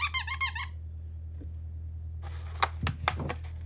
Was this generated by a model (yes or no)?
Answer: no